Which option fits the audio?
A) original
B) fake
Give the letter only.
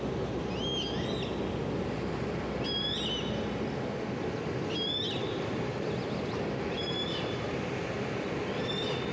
A